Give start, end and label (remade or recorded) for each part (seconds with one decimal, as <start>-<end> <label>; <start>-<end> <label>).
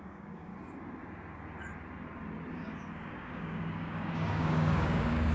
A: 0.0-0.5 remade; 0.5-2.5 recorded; 2.5-5.3 remade